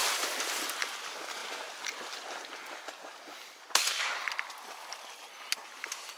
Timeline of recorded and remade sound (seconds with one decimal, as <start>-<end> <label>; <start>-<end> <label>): 0.0-6.2 recorded